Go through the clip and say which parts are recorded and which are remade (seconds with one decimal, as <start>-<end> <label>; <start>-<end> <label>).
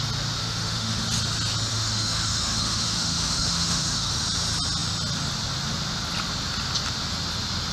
0.0-0.4 recorded; 0.4-1.0 remade; 1.0-1.7 recorded; 1.7-4.2 remade; 4.2-7.7 recorded